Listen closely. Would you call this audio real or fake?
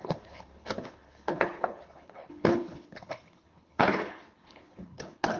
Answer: fake